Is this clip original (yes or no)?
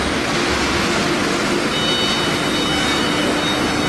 yes